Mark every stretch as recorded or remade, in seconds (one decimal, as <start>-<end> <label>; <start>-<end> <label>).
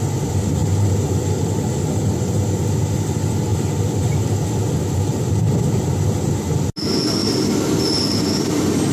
0.0-8.9 recorded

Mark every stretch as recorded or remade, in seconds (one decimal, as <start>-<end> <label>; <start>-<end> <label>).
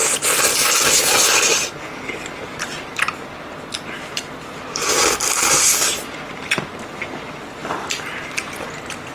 0.0-9.1 recorded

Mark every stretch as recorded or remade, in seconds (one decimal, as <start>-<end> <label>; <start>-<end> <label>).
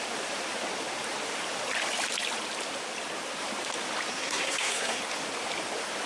0.0-4.1 recorded; 4.1-5.0 remade; 5.0-6.1 recorded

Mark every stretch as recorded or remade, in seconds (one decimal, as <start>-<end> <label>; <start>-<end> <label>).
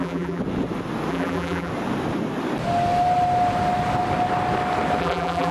0.0-0.4 remade; 0.4-1.1 recorded; 1.1-1.7 remade; 1.7-5.0 recorded; 5.0-5.5 remade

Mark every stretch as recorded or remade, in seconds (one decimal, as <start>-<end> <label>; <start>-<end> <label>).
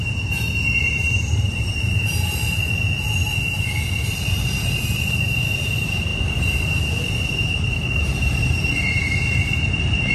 0.0-2.6 remade; 2.6-4.2 recorded; 4.2-10.1 remade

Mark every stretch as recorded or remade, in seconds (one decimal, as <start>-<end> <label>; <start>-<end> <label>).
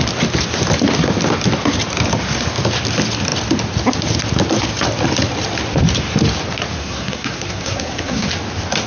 0.0-6.8 recorded; 6.8-8.3 remade; 8.3-8.9 recorded